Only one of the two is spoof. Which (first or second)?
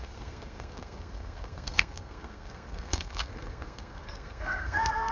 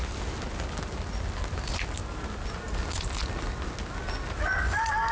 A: first